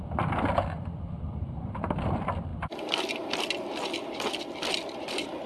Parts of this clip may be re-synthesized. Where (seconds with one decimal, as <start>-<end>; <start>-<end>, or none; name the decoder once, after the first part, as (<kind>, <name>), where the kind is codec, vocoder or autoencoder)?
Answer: 0.0-2.5 (vocoder, BigVGAN v2); 3.3-5.5